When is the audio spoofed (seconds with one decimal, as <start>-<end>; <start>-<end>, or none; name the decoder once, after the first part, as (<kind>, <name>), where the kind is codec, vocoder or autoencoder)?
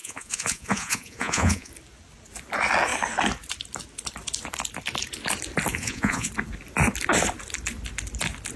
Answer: 0.0-1.7 (vocoder, Vocos); 5.7-6.3